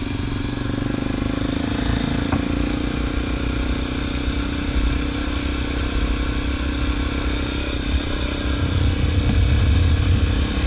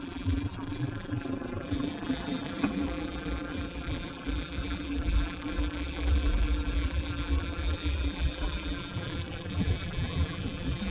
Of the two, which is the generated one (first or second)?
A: second